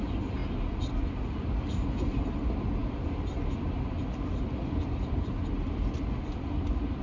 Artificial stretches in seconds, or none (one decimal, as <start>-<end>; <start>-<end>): none